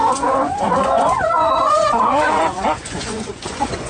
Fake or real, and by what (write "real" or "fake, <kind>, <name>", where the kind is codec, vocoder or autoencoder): fake, vocoder, Vocos